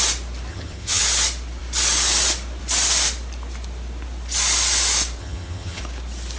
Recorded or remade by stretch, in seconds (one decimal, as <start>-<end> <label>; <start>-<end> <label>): 0.0-0.5 recorded; 0.5-1.0 remade; 1.0-5.2 recorded; 5.2-5.8 remade; 5.8-6.4 recorded